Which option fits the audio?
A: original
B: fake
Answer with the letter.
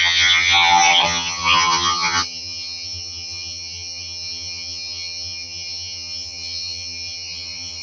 B